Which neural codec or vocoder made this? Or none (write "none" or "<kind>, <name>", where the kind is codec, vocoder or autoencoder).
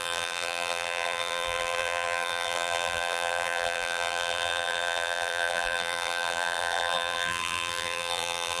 vocoder, BigVGAN v2